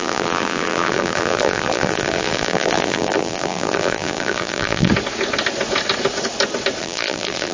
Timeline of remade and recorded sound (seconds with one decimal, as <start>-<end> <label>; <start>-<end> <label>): 0.0-4.9 remade; 4.9-6.8 recorded; 6.8-7.5 remade